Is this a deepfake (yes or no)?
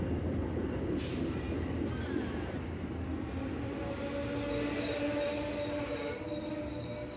no